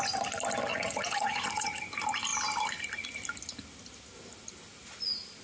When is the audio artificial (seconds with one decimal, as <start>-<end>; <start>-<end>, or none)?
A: 0.7-1.8